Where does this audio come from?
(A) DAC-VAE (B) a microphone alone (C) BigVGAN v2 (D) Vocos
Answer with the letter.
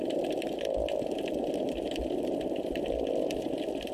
B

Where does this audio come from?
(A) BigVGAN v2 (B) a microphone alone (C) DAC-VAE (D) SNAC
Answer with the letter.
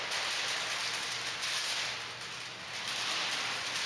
B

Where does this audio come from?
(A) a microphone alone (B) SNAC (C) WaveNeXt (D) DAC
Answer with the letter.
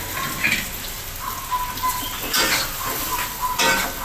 A